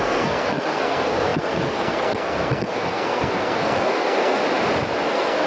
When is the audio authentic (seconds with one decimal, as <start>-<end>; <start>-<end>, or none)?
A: 4.4-5.1